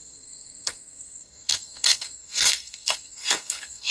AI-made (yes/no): yes